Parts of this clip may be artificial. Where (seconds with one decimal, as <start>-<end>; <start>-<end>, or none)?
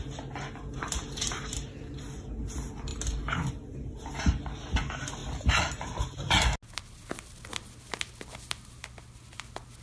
none